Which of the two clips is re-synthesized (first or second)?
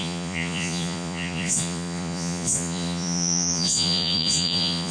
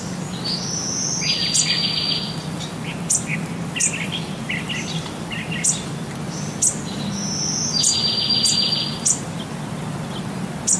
first